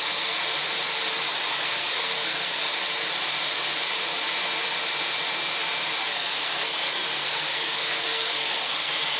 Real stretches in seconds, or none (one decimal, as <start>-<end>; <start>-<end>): 0.4-1.5; 2.7-6.0